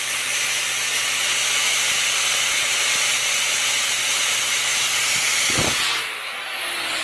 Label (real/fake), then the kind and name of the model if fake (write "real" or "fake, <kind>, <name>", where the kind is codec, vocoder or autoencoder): real